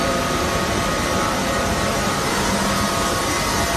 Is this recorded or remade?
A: recorded